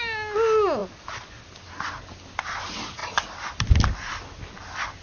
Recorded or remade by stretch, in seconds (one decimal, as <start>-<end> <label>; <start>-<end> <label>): 0.0-5.0 recorded